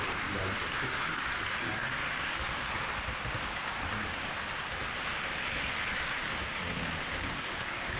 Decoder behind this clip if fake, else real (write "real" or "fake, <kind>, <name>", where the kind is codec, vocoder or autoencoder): real